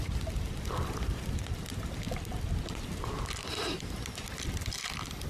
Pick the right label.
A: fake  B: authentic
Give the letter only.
B